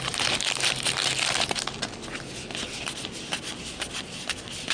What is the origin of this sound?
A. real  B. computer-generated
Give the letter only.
A